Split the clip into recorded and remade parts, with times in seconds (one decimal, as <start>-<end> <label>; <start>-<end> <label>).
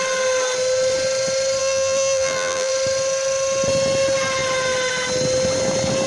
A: 0.0-1.6 recorded; 1.6-2.7 remade; 2.7-6.1 recorded